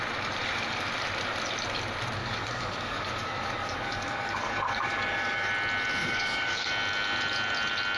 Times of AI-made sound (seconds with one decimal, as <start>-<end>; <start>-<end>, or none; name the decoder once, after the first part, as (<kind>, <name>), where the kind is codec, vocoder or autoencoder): 2.2-5.5 (codec, DAC); 6.0-6.7

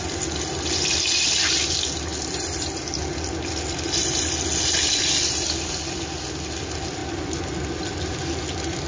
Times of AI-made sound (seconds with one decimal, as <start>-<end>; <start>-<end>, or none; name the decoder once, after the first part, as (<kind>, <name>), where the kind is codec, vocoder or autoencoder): none

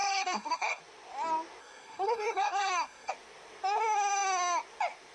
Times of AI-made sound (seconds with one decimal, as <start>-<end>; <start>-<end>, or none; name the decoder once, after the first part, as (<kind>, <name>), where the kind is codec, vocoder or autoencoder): 0.0-0.8 (codec, SNAC); 1.6-3.1

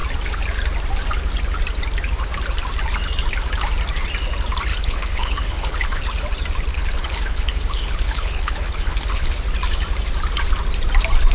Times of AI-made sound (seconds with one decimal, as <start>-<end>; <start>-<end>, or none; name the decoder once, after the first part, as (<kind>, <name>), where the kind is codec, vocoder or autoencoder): 4.7-6.0 (codec, HILCodec); 6.7-9.4

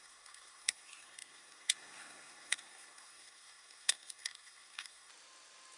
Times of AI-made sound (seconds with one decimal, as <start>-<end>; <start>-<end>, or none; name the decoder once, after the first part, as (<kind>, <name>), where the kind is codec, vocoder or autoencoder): 0.0-5.1 (codec, SNAC)